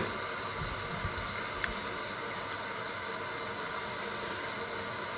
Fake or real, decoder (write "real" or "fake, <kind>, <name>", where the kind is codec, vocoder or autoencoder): real